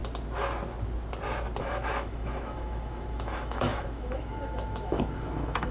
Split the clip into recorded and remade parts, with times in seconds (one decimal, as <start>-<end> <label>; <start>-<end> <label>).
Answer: 0.0-1.6 recorded; 1.6-5.7 remade